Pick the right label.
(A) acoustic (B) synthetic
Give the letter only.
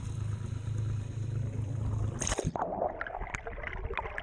A